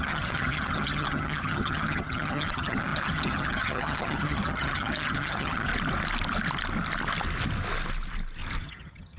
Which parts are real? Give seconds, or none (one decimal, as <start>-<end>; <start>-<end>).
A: 5.7-8.6